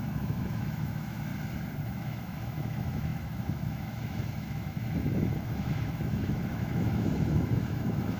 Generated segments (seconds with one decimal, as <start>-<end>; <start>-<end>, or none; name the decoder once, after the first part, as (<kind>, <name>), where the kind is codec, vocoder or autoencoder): 0.0-1.3 (autoencoder, DAC-VAE); 1.8-8.2